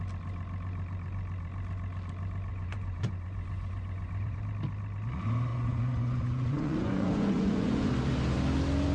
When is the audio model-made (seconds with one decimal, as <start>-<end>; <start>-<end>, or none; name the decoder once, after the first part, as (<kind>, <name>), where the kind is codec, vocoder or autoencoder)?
2.5-4.4 (vocoder, Vocos); 5.5-7.9